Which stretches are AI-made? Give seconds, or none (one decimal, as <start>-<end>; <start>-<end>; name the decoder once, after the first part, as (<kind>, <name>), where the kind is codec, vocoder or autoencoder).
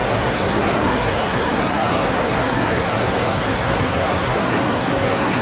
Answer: 0.0-5.4 (codec, SNAC)